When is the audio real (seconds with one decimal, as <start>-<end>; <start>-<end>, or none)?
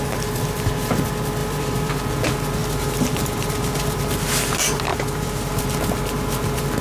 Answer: 0.0-1.4; 1.9-2.6; 4.0-4.9; 5.5-6.8